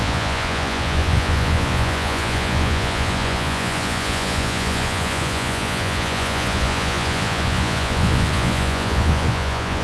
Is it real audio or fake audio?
fake